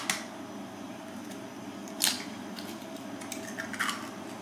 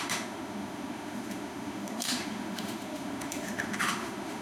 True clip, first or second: first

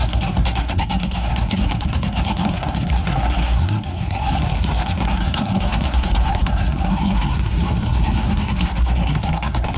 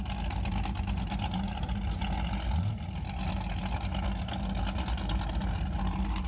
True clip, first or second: second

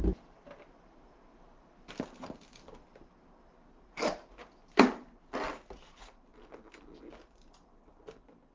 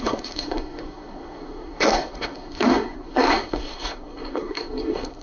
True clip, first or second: first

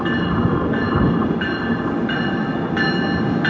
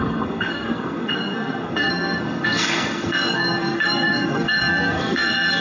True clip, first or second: first